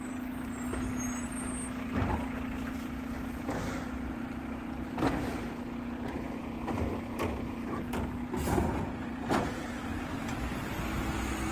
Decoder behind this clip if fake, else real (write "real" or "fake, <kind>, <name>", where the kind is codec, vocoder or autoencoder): real